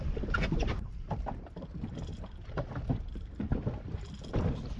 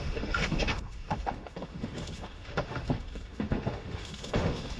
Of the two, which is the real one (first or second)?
first